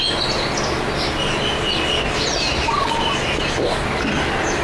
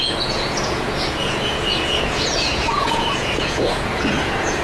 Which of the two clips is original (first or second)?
first